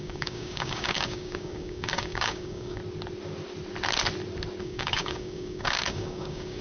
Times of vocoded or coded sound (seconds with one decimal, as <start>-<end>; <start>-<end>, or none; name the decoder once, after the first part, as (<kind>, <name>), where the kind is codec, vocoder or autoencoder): 0.0-2.8 (codec, DAC); 4.6-6.6